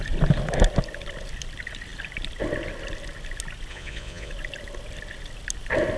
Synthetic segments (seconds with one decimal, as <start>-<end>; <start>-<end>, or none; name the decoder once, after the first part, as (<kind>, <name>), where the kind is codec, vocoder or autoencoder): 3.7-4.3 (vocoder, Vocos)